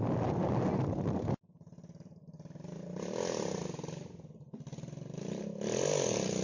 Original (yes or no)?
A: yes